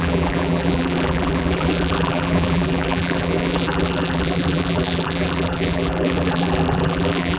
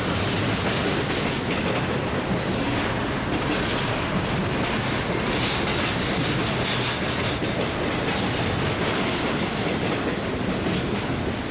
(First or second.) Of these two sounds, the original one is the second